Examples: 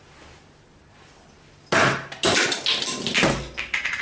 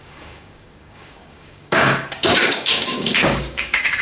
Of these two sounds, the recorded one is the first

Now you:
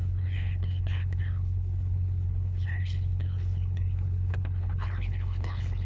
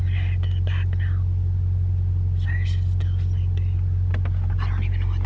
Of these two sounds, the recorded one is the second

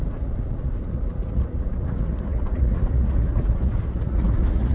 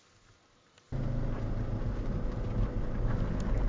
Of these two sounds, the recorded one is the second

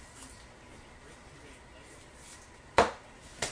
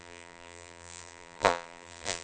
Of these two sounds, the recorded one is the first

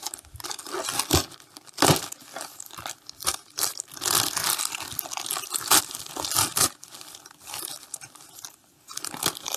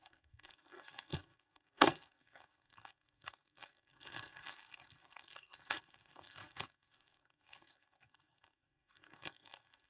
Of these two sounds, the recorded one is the first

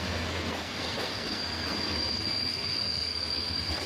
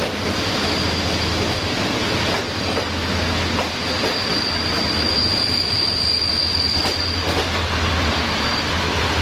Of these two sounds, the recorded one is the second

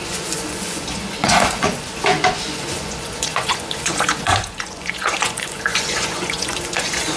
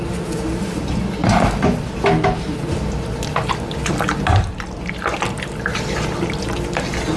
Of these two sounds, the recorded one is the second